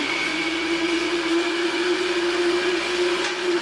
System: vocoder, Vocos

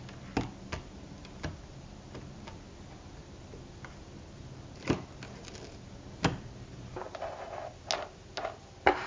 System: none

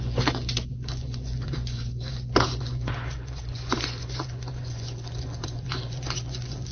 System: vocoder, Vocos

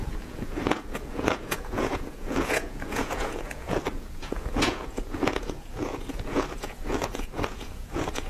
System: vocoder, Vocos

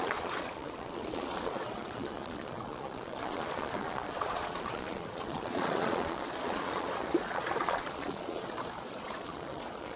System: vocoder, Vocos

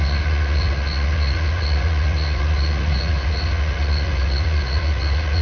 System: vocoder, Vocos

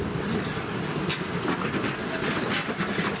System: none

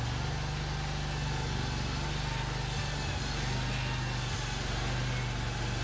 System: none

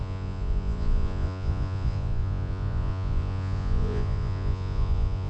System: vocoder, Vocos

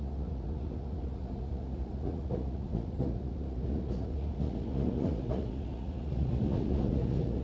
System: vocoder, Vocos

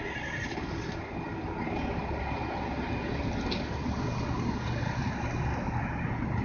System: none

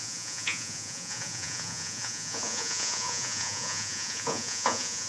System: vocoder, Vocos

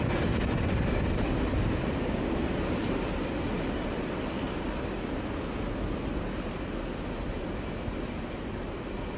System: none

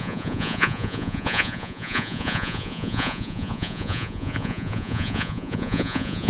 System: vocoder, Vocos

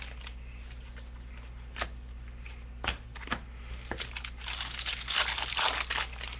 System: none